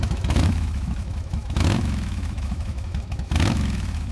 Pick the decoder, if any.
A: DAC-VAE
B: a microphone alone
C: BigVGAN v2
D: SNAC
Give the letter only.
A